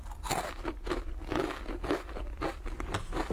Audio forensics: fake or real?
real